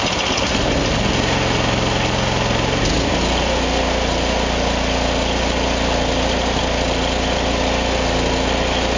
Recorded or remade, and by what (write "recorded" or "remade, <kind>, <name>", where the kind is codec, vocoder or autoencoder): recorded